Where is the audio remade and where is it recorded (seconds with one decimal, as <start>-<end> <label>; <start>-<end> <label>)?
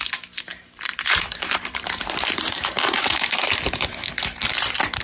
0.0-0.5 recorded; 0.5-3.5 remade; 3.5-5.0 recorded